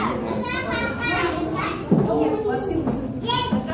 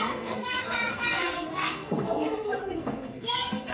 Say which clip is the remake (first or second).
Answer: second